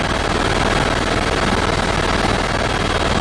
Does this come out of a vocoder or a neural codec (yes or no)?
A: no